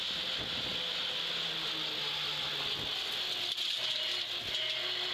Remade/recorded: recorded